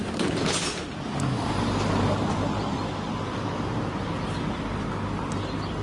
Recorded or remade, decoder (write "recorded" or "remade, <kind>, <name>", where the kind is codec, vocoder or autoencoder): recorded